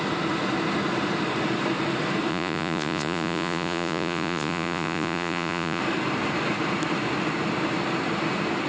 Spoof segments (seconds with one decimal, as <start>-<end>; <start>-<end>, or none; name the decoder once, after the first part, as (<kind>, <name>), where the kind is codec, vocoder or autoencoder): 2.3-5.8 (vocoder, Vocos)